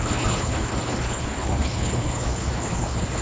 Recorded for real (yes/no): no